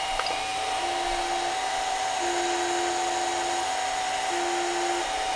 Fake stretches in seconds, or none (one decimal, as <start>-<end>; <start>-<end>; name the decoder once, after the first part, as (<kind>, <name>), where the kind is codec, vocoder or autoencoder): none